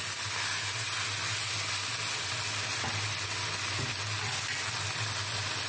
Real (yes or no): yes